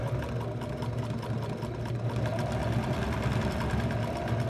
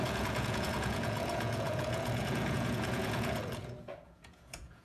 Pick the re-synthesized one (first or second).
second